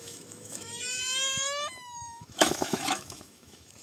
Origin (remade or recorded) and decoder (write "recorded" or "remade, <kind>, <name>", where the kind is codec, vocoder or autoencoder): remade, autoencoder, DAC-VAE